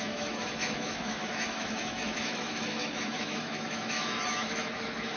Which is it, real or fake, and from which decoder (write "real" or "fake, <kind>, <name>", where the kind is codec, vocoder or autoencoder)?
fake, autoencoder, DAC-VAE